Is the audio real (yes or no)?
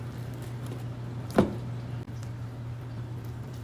yes